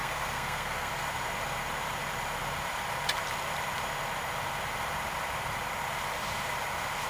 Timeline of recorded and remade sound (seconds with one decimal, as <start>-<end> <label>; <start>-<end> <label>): 0.0-0.9 remade; 0.9-7.1 recorded